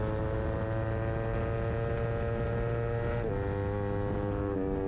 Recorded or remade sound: recorded